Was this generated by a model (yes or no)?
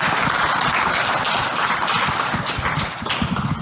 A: no